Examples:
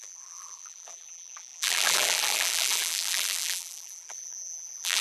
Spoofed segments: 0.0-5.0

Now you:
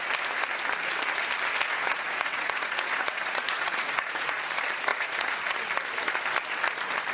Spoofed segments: 1.7-4.5; 4.9-5.6